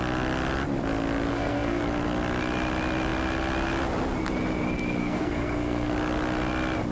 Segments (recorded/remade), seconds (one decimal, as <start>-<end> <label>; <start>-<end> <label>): 0.0-1.3 recorded; 1.3-1.8 remade; 1.8-5.0 recorded; 5.0-5.9 remade; 5.9-6.9 recorded